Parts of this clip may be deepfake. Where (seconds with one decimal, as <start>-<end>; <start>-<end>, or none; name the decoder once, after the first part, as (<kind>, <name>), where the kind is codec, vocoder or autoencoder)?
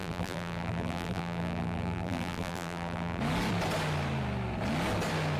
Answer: 0.0-3.2 (vocoder, BigVGAN v2)